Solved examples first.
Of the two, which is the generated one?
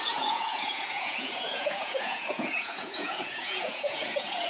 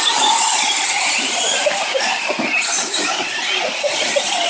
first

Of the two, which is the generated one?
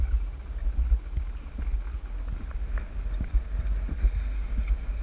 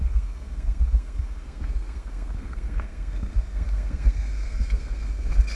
second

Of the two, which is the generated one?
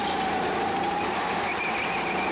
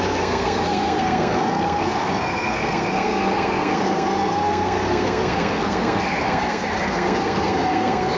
second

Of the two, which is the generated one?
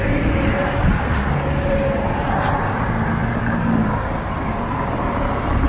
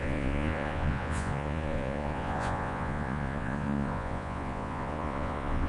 second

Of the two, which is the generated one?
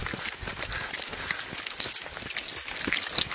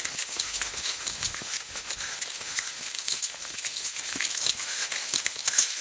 second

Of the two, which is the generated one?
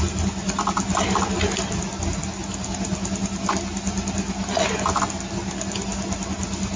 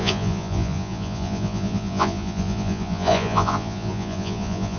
second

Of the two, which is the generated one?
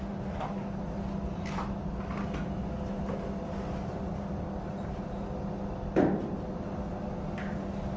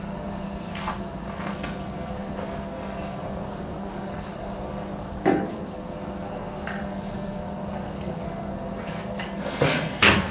second